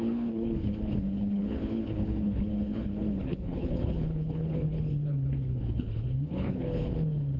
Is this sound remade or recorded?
remade